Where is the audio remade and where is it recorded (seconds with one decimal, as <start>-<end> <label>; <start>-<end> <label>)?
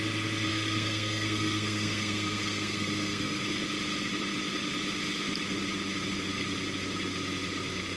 0.0-0.5 recorded; 0.5-3.4 remade; 3.4-8.0 recorded